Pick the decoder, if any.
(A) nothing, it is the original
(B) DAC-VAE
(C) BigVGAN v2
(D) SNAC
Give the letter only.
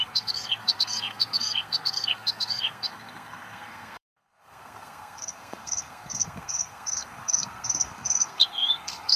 D